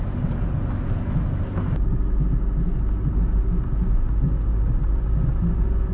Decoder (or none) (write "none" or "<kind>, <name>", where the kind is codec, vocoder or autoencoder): none